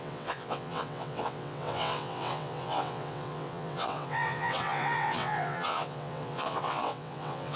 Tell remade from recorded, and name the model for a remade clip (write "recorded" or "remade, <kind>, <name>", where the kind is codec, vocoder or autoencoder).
remade, vocoder, WaveNeXt